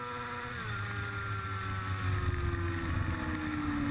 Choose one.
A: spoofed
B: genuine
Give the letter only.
B